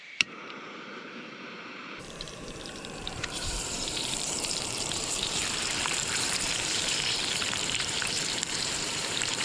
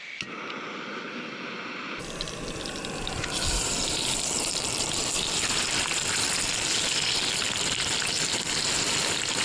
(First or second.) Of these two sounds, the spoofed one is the first